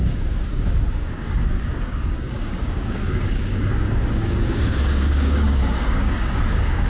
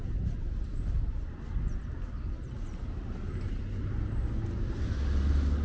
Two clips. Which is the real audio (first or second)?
second